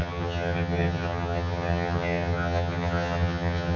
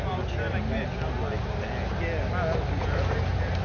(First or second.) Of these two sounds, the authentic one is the second